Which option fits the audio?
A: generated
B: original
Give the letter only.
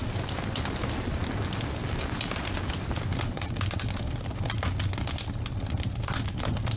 B